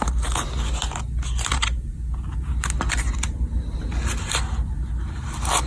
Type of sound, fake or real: real